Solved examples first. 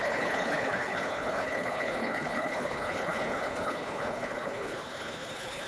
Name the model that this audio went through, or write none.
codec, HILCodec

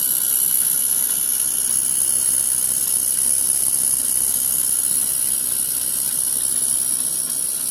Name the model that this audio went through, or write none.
none